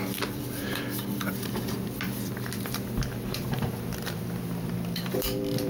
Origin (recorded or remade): remade